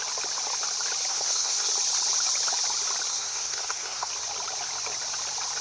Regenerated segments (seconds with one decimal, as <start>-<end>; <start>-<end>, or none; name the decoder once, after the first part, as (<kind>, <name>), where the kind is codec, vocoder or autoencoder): 1.1-1.7 (codec, SNAC); 3.1-4.1